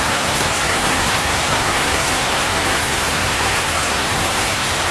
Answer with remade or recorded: remade